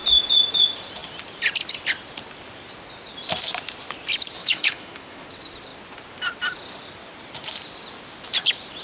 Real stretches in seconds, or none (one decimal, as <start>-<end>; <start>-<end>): 0.0-4.4; 5.2-8.8